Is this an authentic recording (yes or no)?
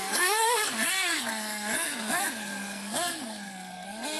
no